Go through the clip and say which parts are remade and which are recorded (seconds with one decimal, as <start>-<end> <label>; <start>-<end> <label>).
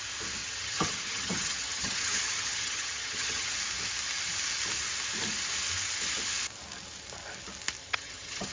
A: 0.0-0.4 recorded; 0.4-3.5 remade; 3.5-7.8 recorded; 7.8-8.5 remade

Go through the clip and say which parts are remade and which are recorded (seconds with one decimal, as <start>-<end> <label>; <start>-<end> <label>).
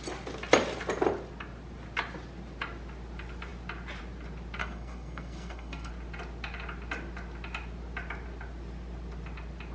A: 0.0-4.6 recorded; 4.6-5.9 remade; 5.9-9.7 recorded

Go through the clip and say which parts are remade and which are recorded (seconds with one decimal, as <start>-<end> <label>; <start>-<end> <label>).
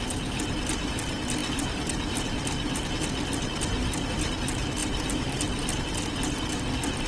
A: 0.0-7.1 recorded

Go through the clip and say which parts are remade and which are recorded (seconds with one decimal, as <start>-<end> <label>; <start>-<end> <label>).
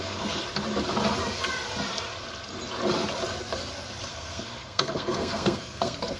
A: 0.0-0.4 remade; 0.4-4.1 recorded; 4.1-6.2 remade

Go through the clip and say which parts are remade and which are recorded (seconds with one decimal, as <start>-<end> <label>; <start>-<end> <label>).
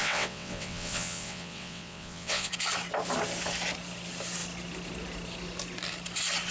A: 0.0-2.5 remade; 2.5-6.5 recorded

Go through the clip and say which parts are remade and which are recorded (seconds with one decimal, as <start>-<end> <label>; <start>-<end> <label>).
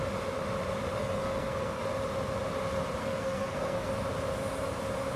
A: 0.0-1.0 recorded; 1.0-1.8 remade; 1.8-3.0 recorded; 3.0-3.9 remade; 3.9-5.2 recorded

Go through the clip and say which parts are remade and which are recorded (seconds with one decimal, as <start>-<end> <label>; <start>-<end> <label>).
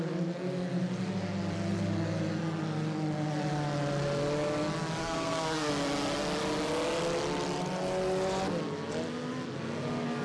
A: 0.0-5.0 recorded; 5.0-5.7 remade; 5.7-10.2 recorded